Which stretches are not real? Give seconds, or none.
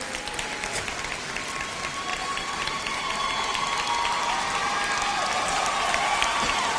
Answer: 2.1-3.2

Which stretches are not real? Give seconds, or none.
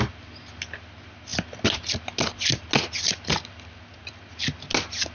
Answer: none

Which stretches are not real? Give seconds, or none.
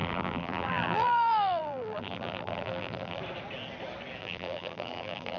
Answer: 0.0-3.2; 4.2-5.4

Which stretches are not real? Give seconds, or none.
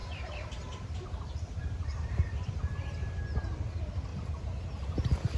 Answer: 0.0-3.2; 4.1-4.6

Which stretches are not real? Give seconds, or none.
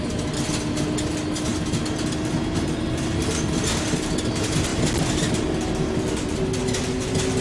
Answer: none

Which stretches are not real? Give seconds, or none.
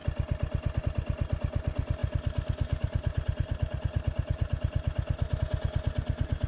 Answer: 2.0-5.4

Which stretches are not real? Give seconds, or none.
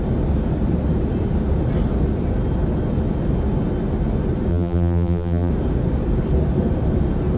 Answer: 4.5-5.5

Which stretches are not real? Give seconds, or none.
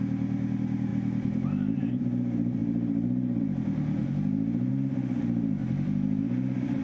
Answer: 4.0-4.7; 5.6-6.2